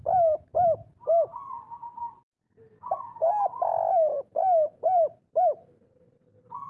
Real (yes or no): yes